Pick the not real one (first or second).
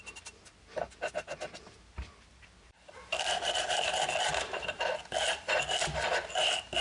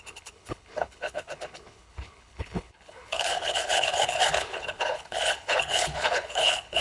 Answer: second